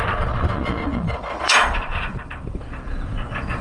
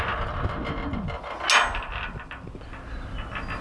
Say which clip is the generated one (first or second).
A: first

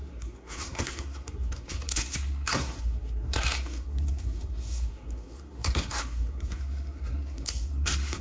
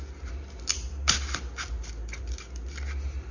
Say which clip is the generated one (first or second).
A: first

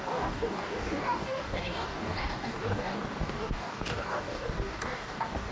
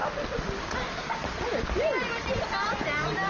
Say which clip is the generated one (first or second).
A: first